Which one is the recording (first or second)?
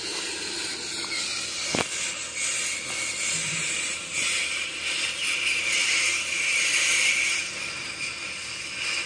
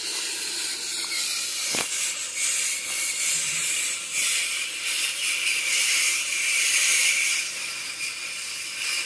first